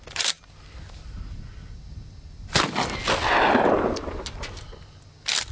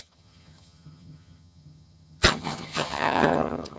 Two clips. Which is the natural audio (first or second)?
first